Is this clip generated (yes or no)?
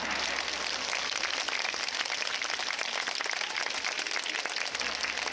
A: no